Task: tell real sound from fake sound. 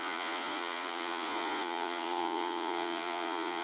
fake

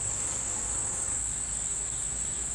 fake